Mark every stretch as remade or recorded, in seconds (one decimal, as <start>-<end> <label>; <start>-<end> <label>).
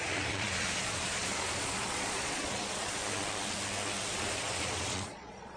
0.0-3.0 remade; 3.0-4.1 recorded; 4.1-5.6 remade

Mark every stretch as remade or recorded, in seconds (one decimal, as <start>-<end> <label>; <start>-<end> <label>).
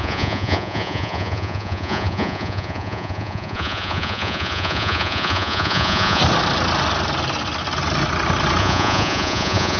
0.0-6.2 remade; 6.2-8.6 recorded; 8.6-9.8 remade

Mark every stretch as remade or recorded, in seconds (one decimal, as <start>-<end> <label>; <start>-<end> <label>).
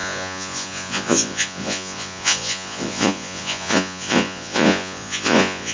0.0-5.7 remade